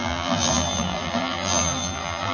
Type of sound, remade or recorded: remade